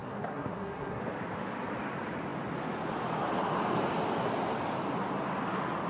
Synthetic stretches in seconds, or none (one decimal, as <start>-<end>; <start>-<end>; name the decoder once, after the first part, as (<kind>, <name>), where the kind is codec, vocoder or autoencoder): 0.0-1.0 (codec, SNAC)